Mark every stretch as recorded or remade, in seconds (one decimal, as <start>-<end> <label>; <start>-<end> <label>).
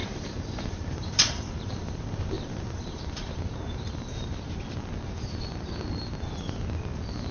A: 0.0-4.4 remade; 4.4-7.3 recorded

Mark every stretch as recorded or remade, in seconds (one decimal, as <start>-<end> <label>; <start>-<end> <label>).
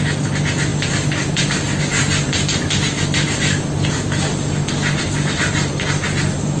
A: 0.0-6.6 recorded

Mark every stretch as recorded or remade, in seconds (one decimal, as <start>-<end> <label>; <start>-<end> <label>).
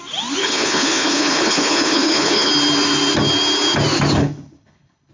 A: 0.0-0.4 recorded; 0.4-2.5 remade; 2.5-4.2 recorded; 4.2-5.1 remade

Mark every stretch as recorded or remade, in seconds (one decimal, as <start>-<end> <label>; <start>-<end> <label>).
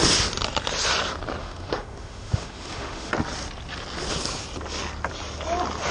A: 0.0-1.4 recorded; 1.4-3.1 remade; 3.1-5.9 recorded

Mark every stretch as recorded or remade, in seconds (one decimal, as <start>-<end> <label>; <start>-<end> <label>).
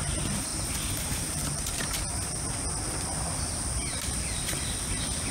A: 0.0-0.5 remade; 0.5-1.0 recorded; 1.0-1.8 remade; 1.8-3.9 recorded; 3.9-5.3 remade